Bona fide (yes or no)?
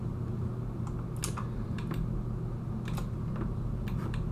yes